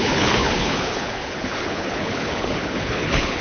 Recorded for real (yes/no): no